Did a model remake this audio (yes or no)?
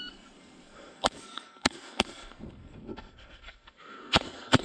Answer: yes